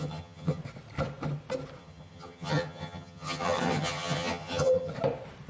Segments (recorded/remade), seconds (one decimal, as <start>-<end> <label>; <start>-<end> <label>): 0.0-0.6 remade; 0.6-1.8 recorded; 1.8-4.9 remade; 4.9-5.5 recorded